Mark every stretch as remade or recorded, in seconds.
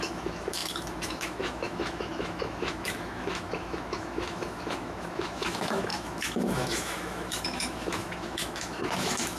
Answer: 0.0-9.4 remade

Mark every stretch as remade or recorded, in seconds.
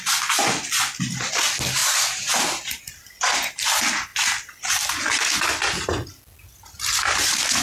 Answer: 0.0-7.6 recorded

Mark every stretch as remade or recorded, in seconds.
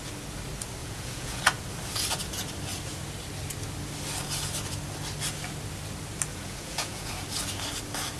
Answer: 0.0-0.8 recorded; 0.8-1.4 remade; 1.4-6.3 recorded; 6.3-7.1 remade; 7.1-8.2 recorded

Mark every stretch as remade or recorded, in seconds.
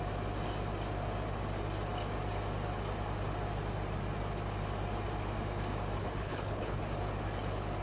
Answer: 0.0-6.0 recorded; 6.0-6.8 remade; 6.8-7.8 recorded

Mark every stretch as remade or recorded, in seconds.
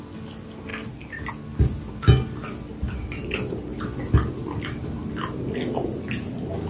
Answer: 0.0-6.7 recorded